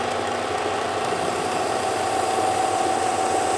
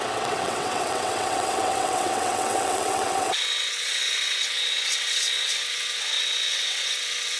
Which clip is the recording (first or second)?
first